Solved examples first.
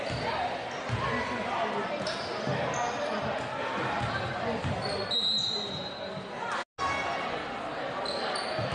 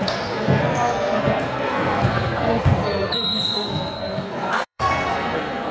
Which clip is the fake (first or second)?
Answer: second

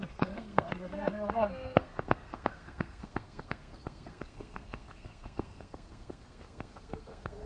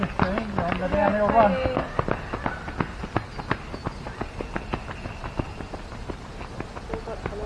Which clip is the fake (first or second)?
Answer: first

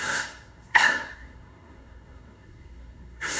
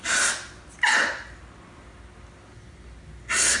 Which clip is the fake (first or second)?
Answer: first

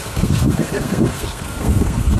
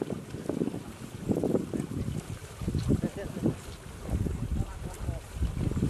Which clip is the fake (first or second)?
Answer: first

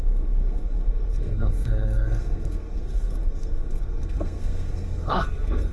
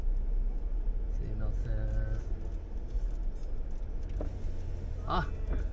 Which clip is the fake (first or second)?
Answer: first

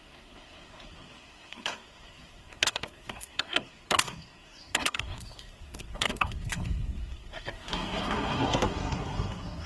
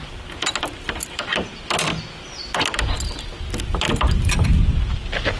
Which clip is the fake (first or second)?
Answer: first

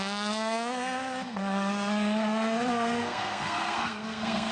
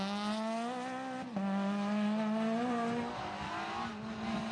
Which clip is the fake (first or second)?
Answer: first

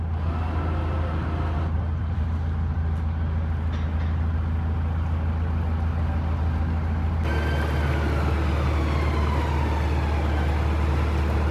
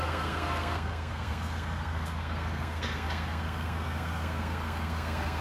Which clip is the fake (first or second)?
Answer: second